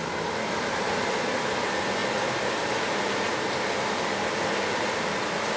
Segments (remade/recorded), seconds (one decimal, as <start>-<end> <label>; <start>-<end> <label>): 0.0-5.6 recorded